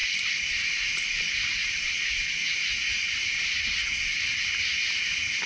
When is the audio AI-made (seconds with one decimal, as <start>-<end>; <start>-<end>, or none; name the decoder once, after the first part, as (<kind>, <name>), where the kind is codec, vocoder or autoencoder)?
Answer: none